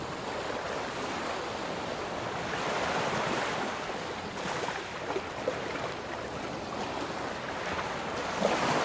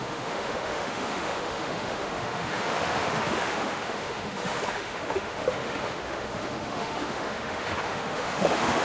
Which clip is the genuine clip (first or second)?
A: first